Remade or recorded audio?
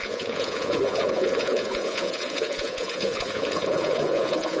remade